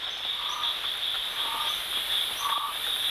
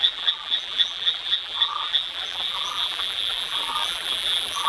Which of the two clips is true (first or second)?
first